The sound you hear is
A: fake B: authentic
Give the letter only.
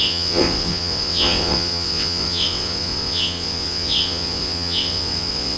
A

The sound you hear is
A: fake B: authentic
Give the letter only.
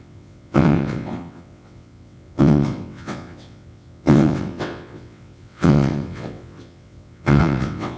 A